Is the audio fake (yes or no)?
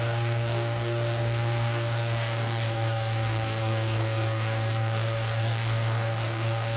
yes